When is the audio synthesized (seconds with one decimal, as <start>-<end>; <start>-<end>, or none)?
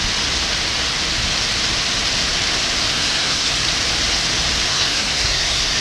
2.9-3.5; 4.7-5.8